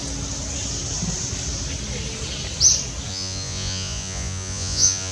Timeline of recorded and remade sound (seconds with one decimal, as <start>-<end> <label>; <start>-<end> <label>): 0.0-3.1 recorded; 3.1-5.1 remade